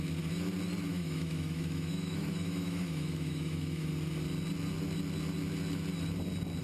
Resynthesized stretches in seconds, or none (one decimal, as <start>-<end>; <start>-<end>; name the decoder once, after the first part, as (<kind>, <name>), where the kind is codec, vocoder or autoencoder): 0.9-3.9 (autoencoder, DAC-VAE)